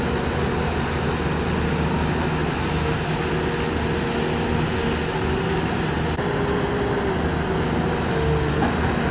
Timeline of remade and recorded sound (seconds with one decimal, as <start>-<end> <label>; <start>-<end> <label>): 0.0-9.1 recorded